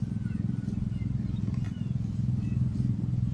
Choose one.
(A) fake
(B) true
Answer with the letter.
B